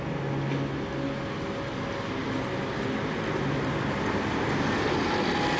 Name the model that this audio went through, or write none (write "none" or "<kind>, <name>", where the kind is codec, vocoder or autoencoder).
none